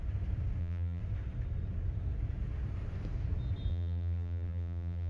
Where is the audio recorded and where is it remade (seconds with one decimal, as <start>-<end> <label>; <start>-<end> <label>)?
0.0-0.6 recorded; 0.6-1.0 remade; 1.0-3.7 recorded; 3.7-5.1 remade

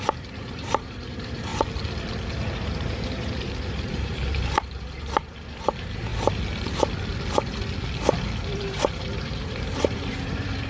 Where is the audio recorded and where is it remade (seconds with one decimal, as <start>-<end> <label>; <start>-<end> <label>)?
0.0-1.5 remade; 1.5-2.5 recorded; 2.5-6.1 remade; 6.1-8.5 recorded; 8.5-10.7 remade

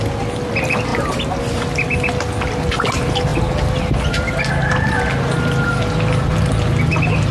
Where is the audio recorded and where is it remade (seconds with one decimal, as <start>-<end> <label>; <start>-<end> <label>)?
0.0-7.3 recorded

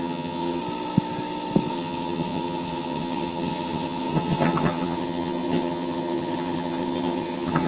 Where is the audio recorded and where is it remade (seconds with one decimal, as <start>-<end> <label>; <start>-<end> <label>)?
0.0-0.6 remade; 0.6-1.7 recorded; 1.7-7.7 remade

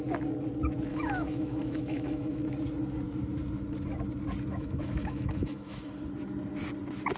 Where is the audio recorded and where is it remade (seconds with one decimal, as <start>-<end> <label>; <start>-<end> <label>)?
0.0-0.9 recorded; 0.9-2.4 remade; 2.4-4.5 recorded; 4.5-5.9 remade; 5.9-7.2 recorded